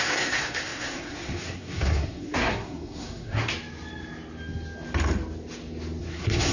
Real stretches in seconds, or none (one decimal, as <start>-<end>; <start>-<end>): 3.4-6.0

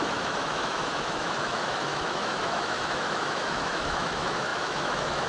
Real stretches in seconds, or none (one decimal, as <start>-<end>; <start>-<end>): none

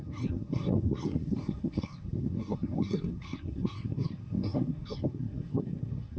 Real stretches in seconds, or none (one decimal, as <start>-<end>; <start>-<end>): none

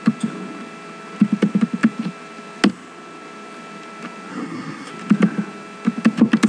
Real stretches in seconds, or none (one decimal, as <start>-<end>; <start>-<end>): 0.0-4.3; 4.9-6.5

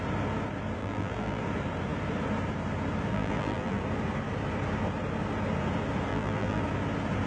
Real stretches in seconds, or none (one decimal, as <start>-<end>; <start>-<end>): 0.0-0.8; 1.4-3.1; 3.8-6.1; 6.6-7.3

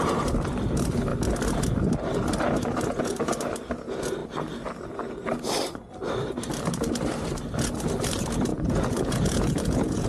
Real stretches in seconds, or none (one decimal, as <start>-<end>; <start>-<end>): 0.0-8.5

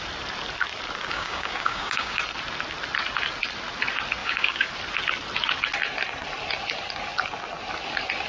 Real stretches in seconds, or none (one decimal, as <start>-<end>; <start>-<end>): 0.0-1.1; 2.2-4.2; 4.7-8.3

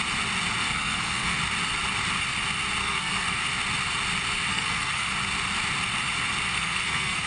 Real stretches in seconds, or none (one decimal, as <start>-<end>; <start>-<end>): 0.0-0.6; 1.4-2.8; 3.4-4.5; 5.1-6.5